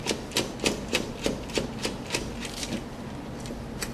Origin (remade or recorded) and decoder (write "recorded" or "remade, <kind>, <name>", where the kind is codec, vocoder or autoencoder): recorded